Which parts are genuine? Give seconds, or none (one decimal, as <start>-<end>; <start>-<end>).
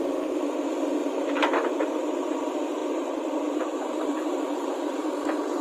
0.0-1.0; 2.0-2.8; 5.1-5.6